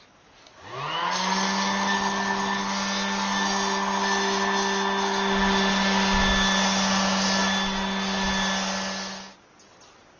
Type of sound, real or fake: real